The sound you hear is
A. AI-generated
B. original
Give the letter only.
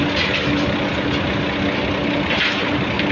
B